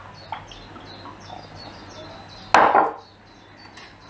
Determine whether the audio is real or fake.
real